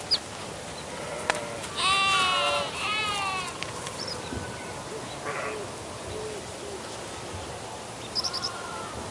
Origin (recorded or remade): recorded